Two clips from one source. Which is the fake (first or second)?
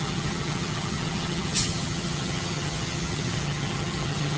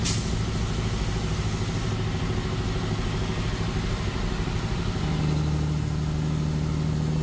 first